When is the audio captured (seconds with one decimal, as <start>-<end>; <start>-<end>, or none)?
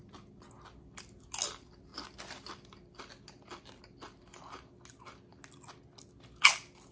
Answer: 0.0-6.9